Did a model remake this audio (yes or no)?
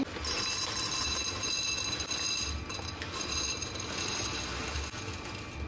no